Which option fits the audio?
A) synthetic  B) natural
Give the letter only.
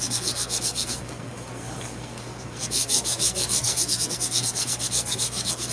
A